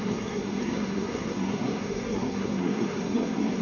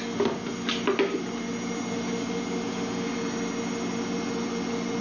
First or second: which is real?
second